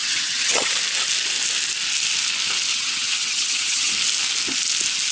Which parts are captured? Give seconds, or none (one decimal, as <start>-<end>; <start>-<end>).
0.7-2.7; 3.9-5.1